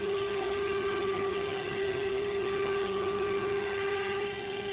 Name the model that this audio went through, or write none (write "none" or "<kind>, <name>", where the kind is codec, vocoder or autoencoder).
vocoder, HiFi-GAN